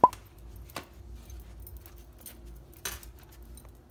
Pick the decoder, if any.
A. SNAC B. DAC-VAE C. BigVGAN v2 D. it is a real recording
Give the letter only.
D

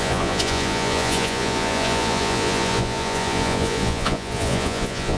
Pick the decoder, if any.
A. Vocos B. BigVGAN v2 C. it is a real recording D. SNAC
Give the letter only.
A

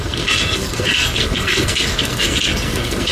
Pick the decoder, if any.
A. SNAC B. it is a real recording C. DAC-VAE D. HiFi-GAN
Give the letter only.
A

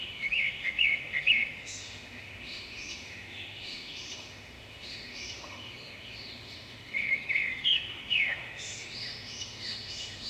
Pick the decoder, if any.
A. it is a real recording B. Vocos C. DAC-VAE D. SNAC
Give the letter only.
C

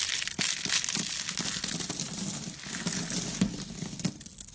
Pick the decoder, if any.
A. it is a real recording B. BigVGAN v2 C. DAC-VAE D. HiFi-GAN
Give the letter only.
A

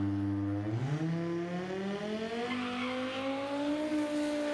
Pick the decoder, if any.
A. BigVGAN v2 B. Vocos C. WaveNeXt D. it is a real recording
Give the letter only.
D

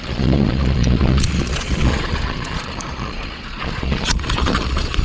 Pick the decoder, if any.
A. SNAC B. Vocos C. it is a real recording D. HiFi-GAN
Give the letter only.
B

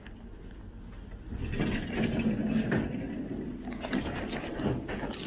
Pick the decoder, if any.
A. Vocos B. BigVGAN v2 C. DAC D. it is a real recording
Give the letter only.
D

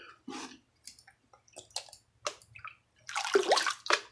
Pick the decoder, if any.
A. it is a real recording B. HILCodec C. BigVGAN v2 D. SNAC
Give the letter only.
A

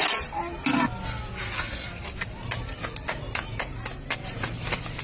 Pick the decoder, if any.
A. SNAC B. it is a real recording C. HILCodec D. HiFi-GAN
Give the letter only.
B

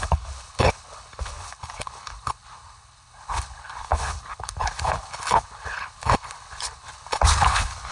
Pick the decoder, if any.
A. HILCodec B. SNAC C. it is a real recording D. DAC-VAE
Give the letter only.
A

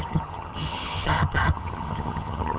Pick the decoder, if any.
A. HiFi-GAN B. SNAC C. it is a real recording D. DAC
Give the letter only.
A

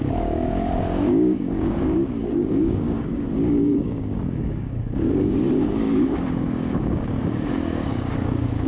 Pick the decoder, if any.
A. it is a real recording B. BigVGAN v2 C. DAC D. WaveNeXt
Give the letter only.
C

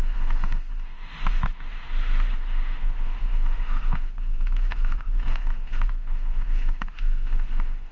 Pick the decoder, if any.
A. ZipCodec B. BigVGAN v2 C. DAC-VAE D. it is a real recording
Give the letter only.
C